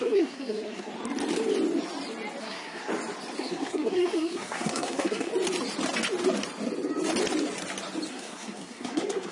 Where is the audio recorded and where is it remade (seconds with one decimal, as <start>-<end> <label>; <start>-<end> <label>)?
0.0-0.9 remade; 0.9-2.4 recorded; 2.4-2.9 remade; 2.9-3.4 recorded; 3.4-5.3 remade; 5.3-8.1 recorded; 8.1-9.3 remade